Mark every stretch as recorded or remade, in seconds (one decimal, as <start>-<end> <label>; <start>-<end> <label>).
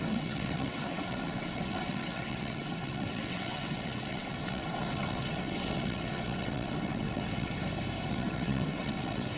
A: 0.0-7.5 remade; 7.5-8.1 recorded; 8.1-9.4 remade